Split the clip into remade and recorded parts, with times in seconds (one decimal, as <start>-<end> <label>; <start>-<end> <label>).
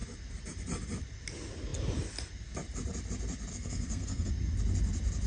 0.0-3.5 recorded; 3.5-4.3 remade; 4.3-5.3 recorded